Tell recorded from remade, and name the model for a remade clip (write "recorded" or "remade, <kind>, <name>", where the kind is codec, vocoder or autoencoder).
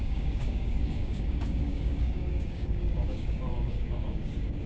remade, codec, DAC